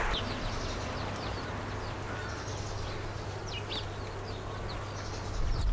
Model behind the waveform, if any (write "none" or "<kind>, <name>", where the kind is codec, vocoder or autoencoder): none